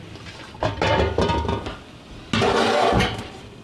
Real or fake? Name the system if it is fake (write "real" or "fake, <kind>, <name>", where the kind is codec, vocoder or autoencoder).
real